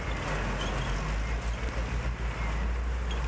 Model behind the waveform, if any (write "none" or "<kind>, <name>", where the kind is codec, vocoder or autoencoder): none